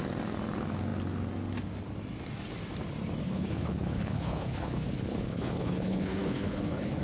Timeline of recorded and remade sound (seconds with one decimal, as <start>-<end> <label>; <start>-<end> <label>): 0.0-3.2 recorded; 3.2-7.0 remade